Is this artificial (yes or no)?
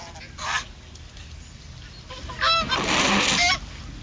no